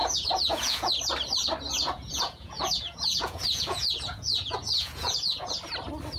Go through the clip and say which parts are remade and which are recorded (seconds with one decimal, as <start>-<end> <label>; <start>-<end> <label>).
0.0-0.9 remade; 0.9-1.8 recorded; 1.8-5.5 remade; 5.5-6.2 recorded